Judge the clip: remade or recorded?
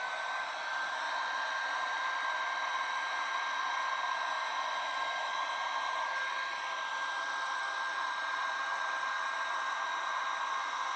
remade